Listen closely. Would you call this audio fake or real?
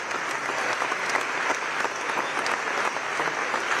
real